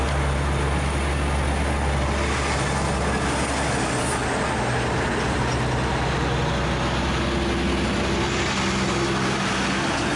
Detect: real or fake real